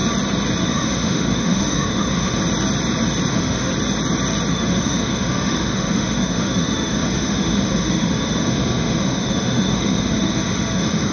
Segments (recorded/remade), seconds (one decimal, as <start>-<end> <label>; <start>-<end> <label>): 0.0-0.6 recorded; 0.6-2.4 remade; 2.4-3.3 recorded; 3.3-3.7 remade; 3.7-4.5 recorded; 4.5-11.1 remade

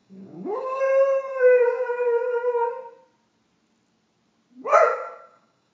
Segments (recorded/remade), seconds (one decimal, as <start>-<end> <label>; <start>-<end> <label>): 0.0-0.8 remade; 0.8-1.3 recorded; 1.3-2.7 remade; 2.7-4.7 recorded; 4.7-5.7 remade

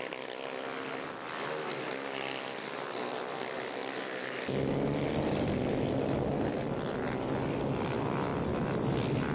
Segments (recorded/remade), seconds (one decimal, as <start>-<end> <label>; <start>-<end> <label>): 0.0-9.3 recorded

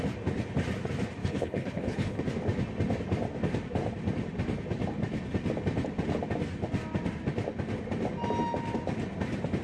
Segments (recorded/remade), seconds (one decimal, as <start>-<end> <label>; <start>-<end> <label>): 0.0-1.2 recorded; 1.2-2.2 remade; 2.2-9.6 recorded